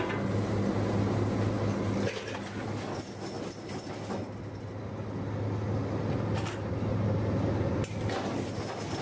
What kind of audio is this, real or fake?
real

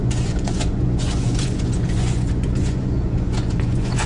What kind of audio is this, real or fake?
fake